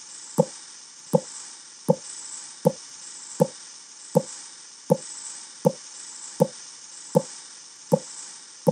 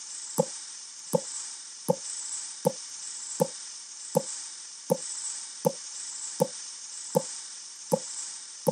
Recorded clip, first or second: first